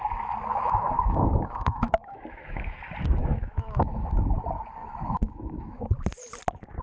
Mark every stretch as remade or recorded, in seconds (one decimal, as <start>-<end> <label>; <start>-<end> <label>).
0.0-0.5 recorded; 0.5-2.8 remade; 2.8-3.2 recorded; 3.2-4.1 remade; 4.1-4.8 recorded; 4.8-5.8 remade; 5.8-6.8 recorded